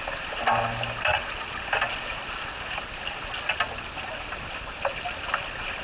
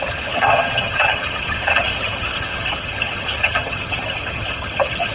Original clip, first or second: first